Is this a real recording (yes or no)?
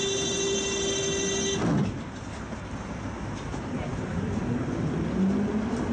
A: yes